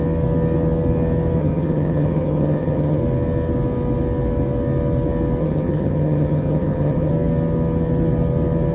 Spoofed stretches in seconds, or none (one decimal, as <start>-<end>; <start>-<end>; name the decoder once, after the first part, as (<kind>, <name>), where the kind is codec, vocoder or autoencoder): 1.4-3.0 (vocoder, HiFi-GAN); 5.4-7.1